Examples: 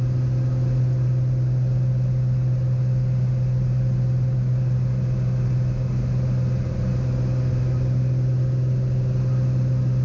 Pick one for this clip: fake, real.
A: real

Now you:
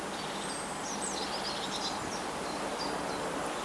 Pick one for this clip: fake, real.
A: real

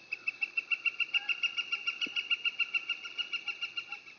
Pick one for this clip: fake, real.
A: real